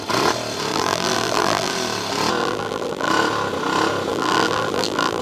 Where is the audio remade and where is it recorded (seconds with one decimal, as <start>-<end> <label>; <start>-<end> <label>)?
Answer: 0.0-0.7 recorded; 0.7-1.7 remade; 1.7-2.4 recorded; 2.4-3.1 remade; 3.1-4.1 recorded; 4.1-5.2 remade